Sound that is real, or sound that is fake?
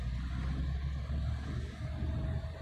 real